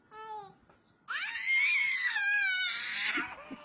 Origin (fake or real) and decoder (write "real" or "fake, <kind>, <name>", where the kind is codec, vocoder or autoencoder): real